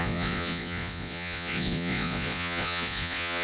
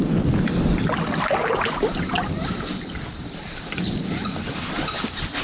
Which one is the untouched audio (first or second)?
second